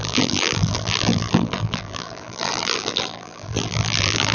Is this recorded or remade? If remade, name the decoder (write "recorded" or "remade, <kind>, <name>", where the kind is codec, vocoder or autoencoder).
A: remade, vocoder, BigVGAN v2